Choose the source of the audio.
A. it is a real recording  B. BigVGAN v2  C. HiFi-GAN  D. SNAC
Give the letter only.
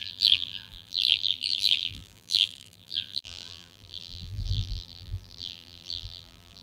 B